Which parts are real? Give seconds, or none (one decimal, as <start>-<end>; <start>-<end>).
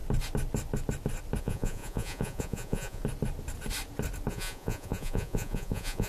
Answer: 0.0-1.4; 3.0-4.3